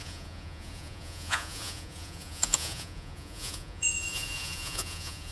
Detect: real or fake fake